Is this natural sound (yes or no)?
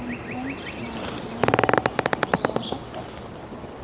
yes